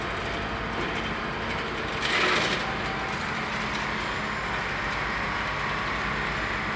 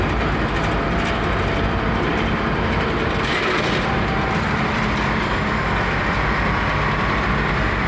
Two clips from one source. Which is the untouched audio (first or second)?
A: first